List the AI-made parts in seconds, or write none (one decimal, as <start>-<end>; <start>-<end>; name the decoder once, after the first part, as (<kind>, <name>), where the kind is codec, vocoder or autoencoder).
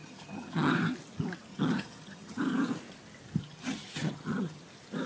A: 0.0-0.7 (vocoder, HiFi-GAN); 1.5-2.4; 3.4-4.6